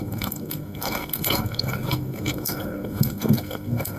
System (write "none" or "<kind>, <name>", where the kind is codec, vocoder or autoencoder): codec, SNAC